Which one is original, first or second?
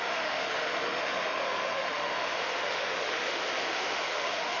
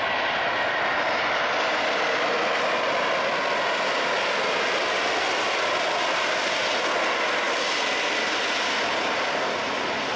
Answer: second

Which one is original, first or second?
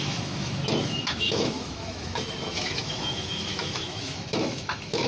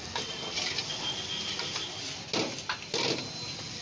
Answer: second